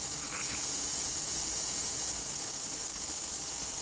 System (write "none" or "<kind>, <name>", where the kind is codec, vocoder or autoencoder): vocoder, Vocos